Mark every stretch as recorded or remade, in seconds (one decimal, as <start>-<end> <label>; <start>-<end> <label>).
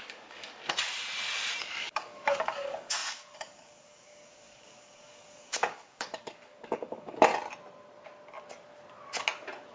0.0-0.6 remade; 0.6-1.6 recorded; 1.6-7.3 remade; 7.3-9.7 recorded